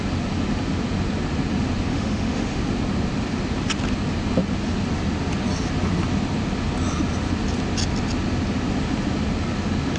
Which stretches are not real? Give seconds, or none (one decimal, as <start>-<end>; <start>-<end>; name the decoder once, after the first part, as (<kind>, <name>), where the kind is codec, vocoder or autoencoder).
1.9-2.6 (autoencoder, DAC-VAE)